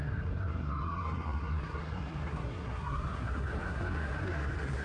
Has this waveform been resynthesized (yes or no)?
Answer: yes